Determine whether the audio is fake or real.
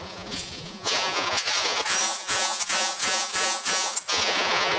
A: fake